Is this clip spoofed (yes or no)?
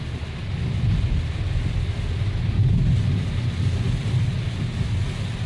no